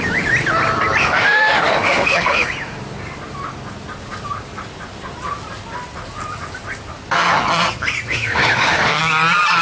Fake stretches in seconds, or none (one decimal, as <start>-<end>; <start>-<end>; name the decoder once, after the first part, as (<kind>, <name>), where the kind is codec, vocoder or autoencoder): 1.0-2.5 (autoencoder, DAC-VAE); 8.1-9.0